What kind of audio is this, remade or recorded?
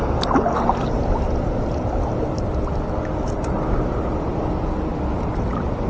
recorded